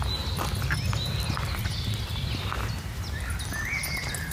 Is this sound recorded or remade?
recorded